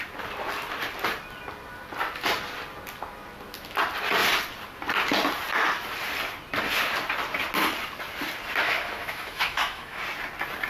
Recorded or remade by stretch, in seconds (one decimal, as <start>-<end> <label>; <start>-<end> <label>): 0.0-8.6 recorded; 8.6-10.0 remade; 10.0-10.7 recorded